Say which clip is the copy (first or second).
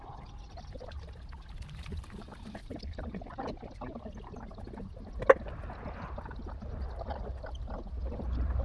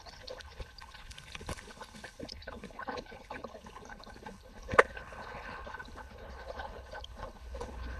second